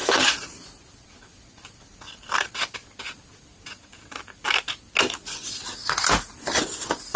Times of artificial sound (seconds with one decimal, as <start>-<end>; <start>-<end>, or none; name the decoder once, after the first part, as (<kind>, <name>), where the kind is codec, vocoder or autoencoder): 0.0-2.8 (vocoder, BigVGAN v2)